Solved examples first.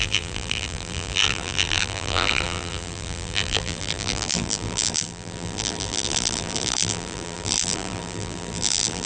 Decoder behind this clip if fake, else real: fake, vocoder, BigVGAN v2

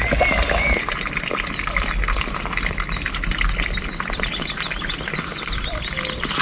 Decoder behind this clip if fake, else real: real